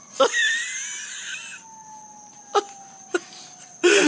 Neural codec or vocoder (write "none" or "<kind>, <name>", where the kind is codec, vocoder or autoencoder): none